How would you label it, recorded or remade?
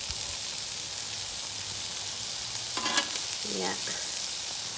recorded